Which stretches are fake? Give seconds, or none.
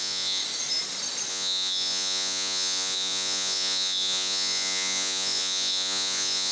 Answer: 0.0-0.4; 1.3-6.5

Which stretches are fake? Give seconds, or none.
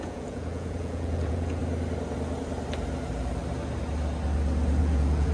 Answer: 0.0-1.6; 4.8-5.3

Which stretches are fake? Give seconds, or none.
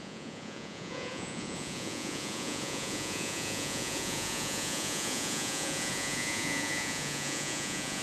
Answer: 0.0-8.0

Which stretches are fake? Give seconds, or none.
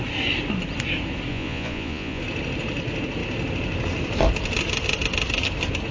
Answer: 1.3-2.2